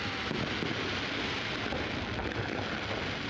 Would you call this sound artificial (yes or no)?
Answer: no